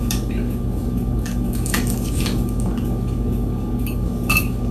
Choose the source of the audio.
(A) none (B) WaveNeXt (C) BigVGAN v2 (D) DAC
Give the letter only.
D